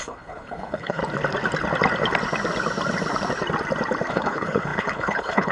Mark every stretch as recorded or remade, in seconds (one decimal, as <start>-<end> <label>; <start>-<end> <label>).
0.0-1.0 remade; 1.0-4.1 recorded; 4.1-5.5 remade